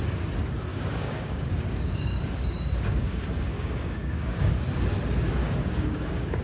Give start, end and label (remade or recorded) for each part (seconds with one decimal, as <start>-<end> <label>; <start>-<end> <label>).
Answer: 0.0-0.7 recorded; 0.7-4.5 remade; 4.5-5.4 recorded; 5.4-6.4 remade